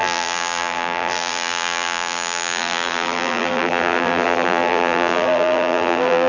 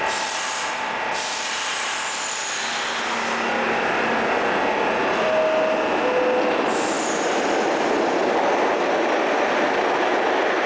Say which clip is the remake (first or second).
first